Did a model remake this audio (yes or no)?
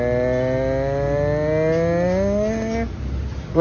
no